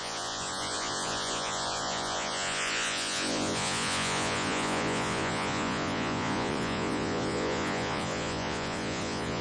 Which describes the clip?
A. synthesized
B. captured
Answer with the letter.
A